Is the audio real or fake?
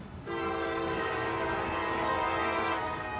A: fake